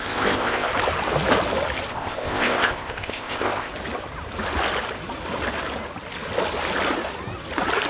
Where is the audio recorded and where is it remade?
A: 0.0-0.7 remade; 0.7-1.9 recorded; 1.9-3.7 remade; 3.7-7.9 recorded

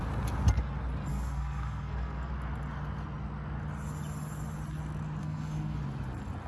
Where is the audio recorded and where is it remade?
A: 0.0-1.1 recorded; 1.1-2.3 remade; 2.3-5.2 recorded; 5.2-5.8 remade; 5.8-6.5 recorded

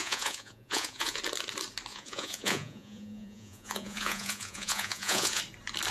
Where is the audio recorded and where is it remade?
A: 0.0-1.2 remade; 1.2-1.9 recorded; 1.9-5.4 remade; 5.4-5.9 recorded

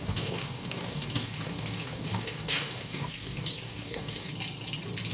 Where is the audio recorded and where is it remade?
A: 0.0-4.3 remade; 4.3-5.1 recorded

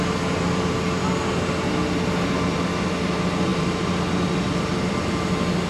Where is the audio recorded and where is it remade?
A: 0.0-5.7 recorded

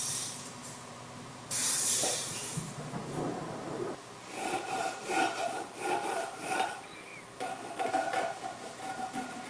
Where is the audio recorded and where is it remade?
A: 0.0-7.1 remade; 7.1-7.9 recorded; 7.9-9.5 remade

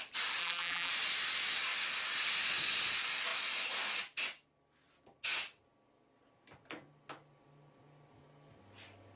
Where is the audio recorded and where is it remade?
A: 0.0-0.4 recorded; 0.4-0.9 remade; 0.9-9.2 recorded

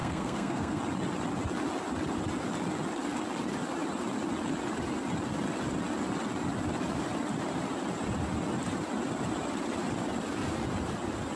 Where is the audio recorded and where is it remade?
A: 0.0-0.8 remade; 0.8-11.4 recorded